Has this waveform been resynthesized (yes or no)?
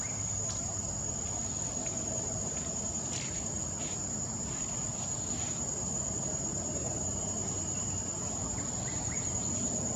no